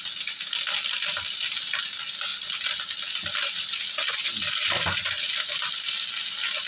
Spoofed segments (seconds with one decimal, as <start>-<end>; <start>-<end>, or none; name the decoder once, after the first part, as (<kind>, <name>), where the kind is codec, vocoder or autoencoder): none